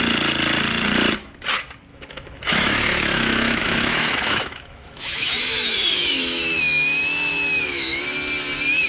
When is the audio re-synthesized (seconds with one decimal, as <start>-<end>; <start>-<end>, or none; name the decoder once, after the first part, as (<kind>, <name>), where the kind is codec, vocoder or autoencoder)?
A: 1.9-6.6 (autoencoder, DAC-VAE); 7.0-8.0